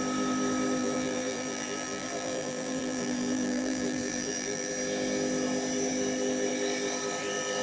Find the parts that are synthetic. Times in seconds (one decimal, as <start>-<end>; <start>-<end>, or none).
0.8-4.7